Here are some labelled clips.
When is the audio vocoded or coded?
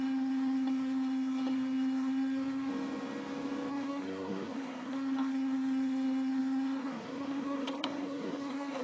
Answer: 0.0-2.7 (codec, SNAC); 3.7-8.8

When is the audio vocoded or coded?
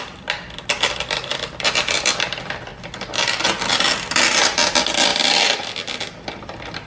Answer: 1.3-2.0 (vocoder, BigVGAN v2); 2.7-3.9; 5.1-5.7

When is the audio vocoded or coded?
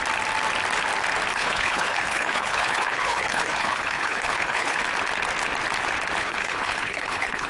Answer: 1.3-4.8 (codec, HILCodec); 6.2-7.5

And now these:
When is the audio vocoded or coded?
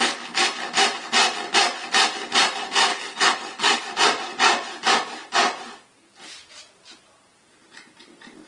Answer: 2.9-3.8 (codec, HILCodec)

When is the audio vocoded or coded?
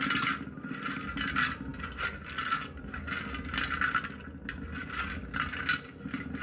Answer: none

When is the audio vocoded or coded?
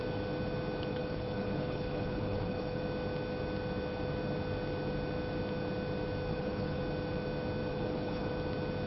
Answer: 0.9-2.8 (codec, HILCodec); 6.3-6.8; 7.7-8.3